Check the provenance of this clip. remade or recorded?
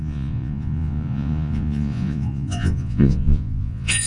remade